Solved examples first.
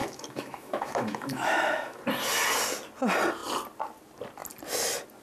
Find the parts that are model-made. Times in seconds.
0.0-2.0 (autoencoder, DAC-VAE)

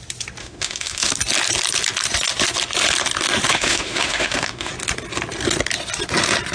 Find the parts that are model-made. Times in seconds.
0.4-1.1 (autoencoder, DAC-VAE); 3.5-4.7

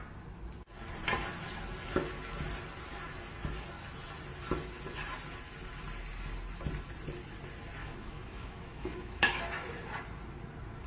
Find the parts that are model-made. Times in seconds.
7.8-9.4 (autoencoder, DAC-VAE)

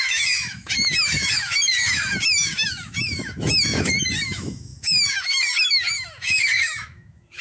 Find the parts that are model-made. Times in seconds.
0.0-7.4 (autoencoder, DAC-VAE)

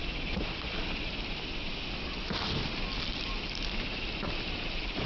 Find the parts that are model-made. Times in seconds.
none